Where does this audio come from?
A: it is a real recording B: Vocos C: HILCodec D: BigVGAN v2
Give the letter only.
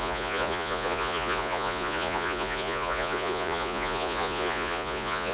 B